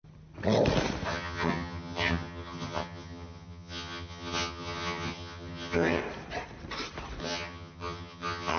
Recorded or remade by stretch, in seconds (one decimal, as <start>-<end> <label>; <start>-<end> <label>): 0.0-1.1 recorded; 1.1-6.0 remade; 6.0-7.2 recorded; 7.2-8.6 remade